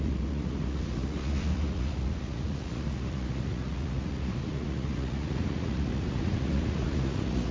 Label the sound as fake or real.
fake